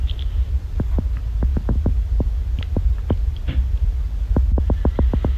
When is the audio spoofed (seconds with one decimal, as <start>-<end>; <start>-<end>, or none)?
none